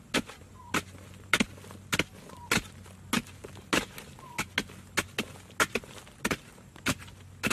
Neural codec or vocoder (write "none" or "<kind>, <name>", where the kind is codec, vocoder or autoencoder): none